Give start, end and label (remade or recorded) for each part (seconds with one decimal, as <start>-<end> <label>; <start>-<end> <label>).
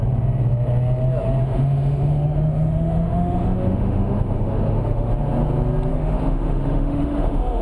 0.0-1.4 recorded; 1.4-5.1 remade; 5.1-5.9 recorded; 5.9-7.6 remade